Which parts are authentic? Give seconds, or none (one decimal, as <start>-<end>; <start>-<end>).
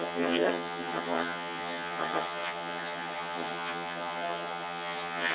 none